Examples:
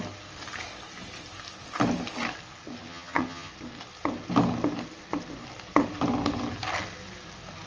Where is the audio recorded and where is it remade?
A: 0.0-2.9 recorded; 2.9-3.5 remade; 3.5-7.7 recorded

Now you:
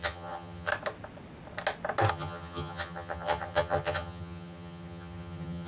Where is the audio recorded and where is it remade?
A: 0.0-0.7 remade; 0.7-2.1 recorded; 2.1-5.7 remade